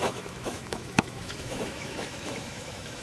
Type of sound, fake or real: fake